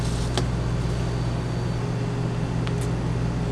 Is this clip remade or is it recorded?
recorded